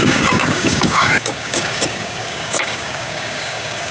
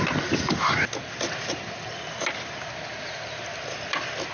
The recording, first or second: second